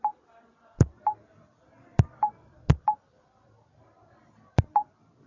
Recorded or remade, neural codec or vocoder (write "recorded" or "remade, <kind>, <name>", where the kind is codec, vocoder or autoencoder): remade, vocoder, BigVGAN v2